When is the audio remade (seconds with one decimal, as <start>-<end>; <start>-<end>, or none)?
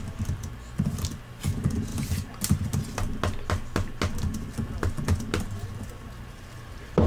none